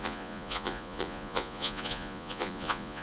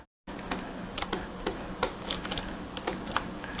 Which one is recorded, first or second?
second